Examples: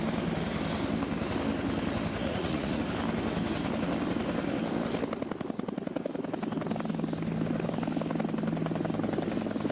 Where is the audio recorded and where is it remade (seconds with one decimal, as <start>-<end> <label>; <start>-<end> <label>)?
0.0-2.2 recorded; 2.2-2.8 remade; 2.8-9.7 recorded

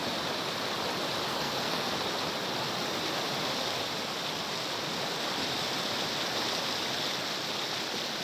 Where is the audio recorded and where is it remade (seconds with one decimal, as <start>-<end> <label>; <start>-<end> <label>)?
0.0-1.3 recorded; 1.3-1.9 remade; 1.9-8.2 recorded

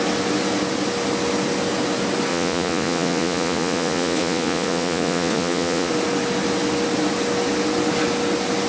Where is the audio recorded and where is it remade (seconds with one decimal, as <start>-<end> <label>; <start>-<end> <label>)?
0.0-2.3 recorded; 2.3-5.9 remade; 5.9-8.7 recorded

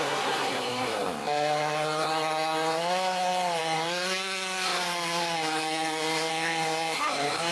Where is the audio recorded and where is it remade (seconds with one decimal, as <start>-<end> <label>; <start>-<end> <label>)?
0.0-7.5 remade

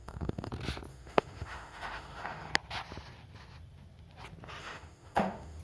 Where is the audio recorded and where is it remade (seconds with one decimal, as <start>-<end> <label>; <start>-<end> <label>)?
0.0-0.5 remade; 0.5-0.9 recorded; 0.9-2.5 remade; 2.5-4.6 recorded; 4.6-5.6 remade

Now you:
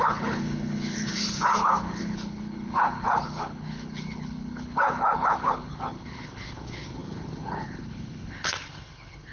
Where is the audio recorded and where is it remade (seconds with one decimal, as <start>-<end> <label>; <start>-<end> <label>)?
0.0-9.3 remade